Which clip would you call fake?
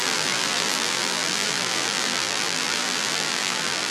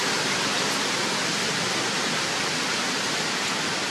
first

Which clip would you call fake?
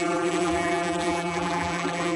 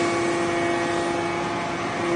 first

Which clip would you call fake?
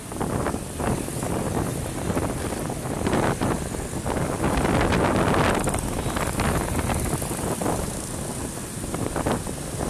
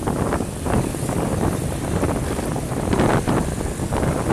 second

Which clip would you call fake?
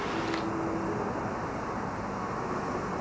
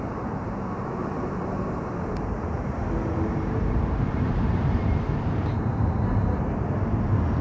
second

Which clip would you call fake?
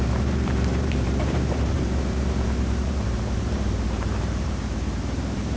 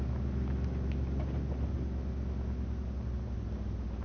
first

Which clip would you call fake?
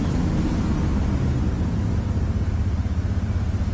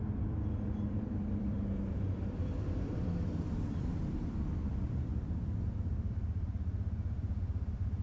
second